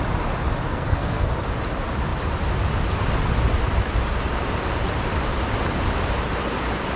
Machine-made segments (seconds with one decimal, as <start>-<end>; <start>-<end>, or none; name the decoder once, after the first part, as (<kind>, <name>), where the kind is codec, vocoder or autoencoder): 0.7-1.3 (codec, SNAC)